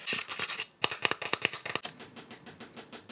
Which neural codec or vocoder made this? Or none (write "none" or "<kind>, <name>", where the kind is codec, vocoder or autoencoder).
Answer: none